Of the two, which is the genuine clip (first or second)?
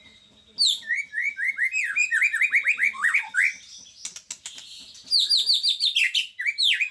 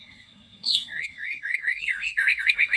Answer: first